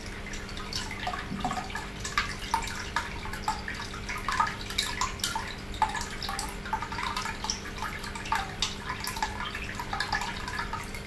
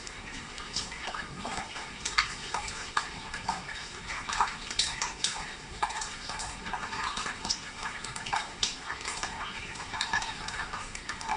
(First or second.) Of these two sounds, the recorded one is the first